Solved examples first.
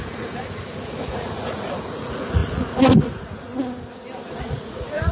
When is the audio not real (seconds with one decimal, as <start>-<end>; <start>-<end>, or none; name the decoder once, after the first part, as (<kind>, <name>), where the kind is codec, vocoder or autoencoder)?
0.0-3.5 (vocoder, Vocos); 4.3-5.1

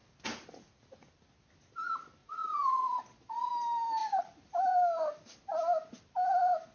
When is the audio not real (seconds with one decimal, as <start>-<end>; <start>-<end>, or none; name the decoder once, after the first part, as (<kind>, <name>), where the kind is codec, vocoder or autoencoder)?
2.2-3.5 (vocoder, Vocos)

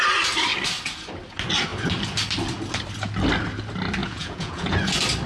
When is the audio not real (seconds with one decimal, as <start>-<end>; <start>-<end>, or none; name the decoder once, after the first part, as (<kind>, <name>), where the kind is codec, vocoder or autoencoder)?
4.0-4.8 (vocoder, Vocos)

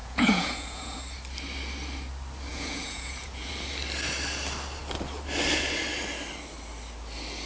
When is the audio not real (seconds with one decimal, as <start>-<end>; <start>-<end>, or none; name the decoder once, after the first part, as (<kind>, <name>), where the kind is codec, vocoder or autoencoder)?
0.0-1.0 (vocoder, Vocos); 2.5-3.5

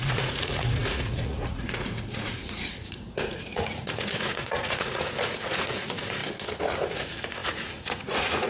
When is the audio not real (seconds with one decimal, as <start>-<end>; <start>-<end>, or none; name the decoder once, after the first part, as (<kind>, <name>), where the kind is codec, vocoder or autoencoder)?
0.0-6.2 (vocoder, Vocos); 6.9-8.5

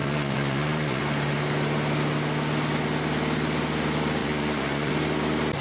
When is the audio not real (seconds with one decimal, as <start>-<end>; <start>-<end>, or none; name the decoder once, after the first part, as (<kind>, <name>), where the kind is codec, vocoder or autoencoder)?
0.0-1.0 (vocoder, Vocos); 4.2-4.9